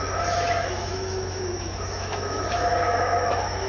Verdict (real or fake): fake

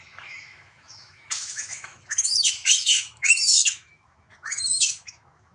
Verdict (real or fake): fake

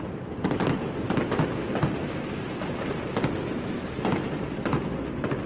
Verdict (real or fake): real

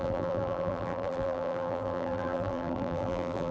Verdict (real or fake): fake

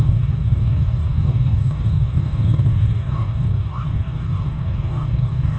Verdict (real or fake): fake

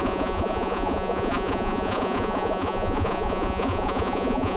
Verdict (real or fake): fake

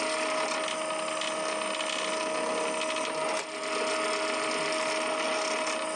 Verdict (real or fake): real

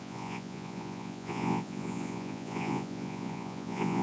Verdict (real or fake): fake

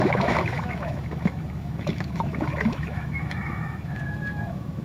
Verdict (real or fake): fake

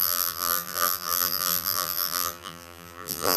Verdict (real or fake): fake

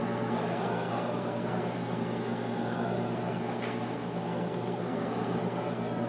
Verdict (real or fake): fake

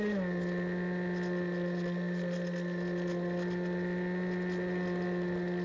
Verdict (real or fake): real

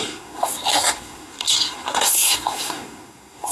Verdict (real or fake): fake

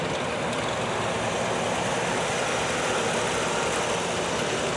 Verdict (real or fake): real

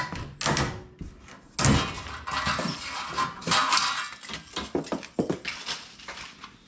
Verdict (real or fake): real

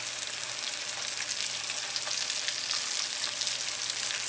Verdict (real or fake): real